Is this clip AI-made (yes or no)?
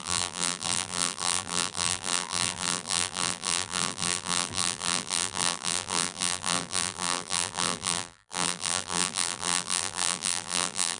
yes